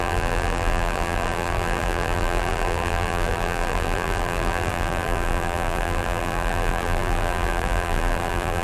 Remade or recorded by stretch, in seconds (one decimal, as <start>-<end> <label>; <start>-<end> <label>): 0.0-8.6 remade